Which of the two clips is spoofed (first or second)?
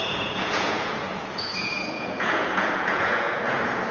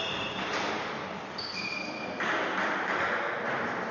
first